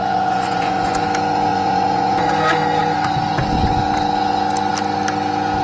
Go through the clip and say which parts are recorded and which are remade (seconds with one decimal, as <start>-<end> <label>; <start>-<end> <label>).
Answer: 0.0-1.0 remade; 1.0-1.5 recorded; 1.5-2.3 remade; 2.3-5.6 recorded